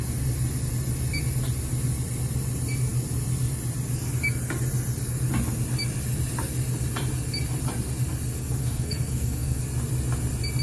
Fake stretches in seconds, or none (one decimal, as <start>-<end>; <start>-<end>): 8.4-9.6

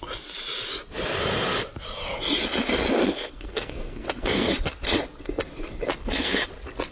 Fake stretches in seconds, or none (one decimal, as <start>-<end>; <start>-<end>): 3.0-4.5; 6.0-6.5